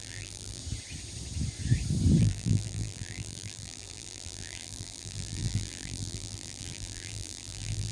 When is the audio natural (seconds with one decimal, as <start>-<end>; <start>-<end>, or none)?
0.6-2.2